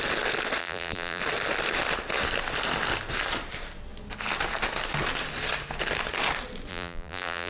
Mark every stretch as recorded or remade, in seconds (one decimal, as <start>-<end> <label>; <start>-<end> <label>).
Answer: 0.0-0.6 recorded; 0.6-1.2 remade; 1.2-6.7 recorded; 6.7-7.5 remade